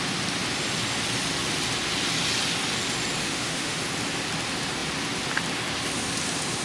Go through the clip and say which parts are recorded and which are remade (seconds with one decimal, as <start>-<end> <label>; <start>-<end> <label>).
0.0-3.2 recorded; 3.2-3.8 remade; 3.8-6.6 recorded